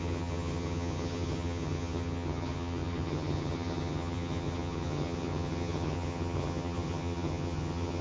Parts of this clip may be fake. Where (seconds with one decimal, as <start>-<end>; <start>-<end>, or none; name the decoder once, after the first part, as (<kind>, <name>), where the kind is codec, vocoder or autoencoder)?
0.0-8.0 (vocoder, HiFi-GAN)